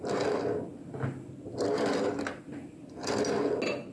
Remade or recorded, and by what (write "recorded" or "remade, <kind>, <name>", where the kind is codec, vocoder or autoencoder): recorded